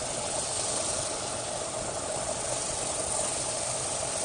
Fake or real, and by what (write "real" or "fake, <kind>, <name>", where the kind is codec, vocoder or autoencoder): real